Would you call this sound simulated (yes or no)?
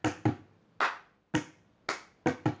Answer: no